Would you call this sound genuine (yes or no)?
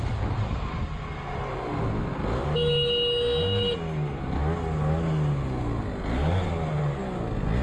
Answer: yes